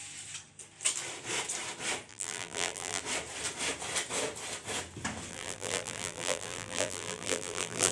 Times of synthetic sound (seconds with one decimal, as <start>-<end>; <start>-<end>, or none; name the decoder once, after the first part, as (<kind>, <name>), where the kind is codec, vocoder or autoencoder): 2.1-3.0 (vocoder, BigVGAN v2); 5.3-7.9